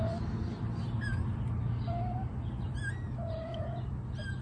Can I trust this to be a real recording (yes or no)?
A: yes